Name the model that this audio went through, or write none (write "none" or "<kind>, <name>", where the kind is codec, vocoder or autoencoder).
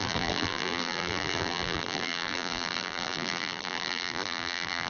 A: vocoder, BigVGAN v2